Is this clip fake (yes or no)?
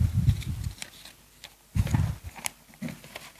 no